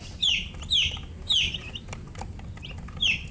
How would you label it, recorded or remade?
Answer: recorded